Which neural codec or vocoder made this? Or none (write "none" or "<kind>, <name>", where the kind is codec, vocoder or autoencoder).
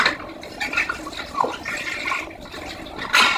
none